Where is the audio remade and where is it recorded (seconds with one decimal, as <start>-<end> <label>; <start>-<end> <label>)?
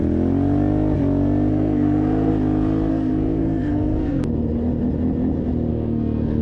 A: 0.0-1.5 recorded; 1.5-2.3 remade; 2.3-2.9 recorded; 2.9-4.2 remade; 4.2-5.7 recorded; 5.7-6.4 remade